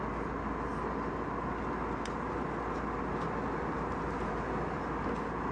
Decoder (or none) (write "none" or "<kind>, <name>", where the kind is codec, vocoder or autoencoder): none